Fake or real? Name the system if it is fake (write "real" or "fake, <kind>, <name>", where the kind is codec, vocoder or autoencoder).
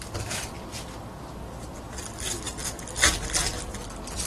real